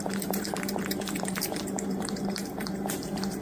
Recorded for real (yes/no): no